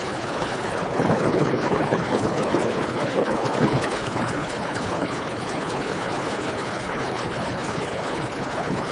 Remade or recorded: remade